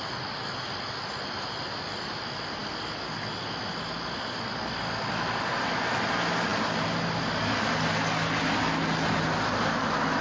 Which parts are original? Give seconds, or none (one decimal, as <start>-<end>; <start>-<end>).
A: 0.0-10.2